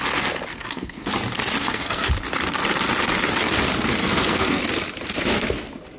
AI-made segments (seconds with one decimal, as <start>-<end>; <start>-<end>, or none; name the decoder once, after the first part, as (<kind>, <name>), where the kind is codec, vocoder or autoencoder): 0.5-1.1 (codec, SNAC); 1.6-2.1; 4.0-4.6